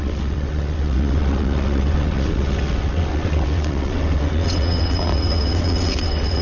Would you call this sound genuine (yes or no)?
no